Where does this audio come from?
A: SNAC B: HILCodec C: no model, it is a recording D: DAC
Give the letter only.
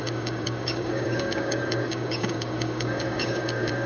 D